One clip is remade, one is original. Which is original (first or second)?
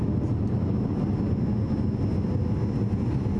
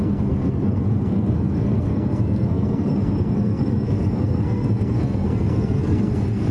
first